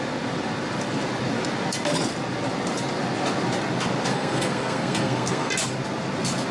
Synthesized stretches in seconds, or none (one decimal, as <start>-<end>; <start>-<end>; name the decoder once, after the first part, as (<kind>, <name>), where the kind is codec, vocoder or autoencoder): 4.1-5.5 (codec, SNAC)